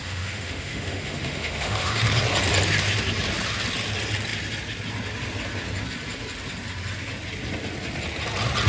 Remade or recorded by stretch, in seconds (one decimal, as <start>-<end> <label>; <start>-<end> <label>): 0.0-2.0 remade; 2.0-8.7 recorded